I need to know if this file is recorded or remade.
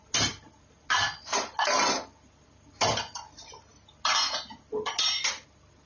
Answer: recorded